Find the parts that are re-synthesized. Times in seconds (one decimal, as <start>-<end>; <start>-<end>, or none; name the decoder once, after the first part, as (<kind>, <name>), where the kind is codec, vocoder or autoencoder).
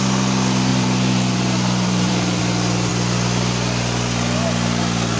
0.7-2.4 (vocoder, BigVGAN v2)